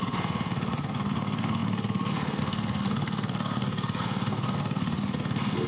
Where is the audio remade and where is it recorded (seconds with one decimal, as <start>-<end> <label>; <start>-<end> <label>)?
0.0-5.7 remade